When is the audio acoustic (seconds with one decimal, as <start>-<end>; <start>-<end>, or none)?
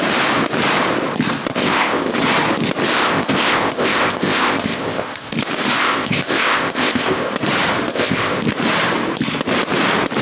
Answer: 0.0-1.5; 2.1-2.9; 5.3-5.8; 7.3-7.9; 8.4-10.2